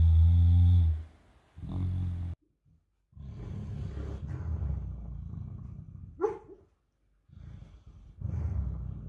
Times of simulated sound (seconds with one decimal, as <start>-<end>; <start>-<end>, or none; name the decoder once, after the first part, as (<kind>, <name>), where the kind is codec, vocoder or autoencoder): none